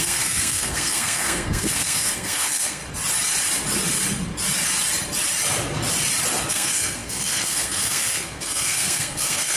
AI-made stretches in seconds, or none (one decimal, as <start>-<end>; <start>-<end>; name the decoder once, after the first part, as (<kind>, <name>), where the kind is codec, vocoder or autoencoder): 0.0-2.8 (codec, SNAC); 6.5-9.6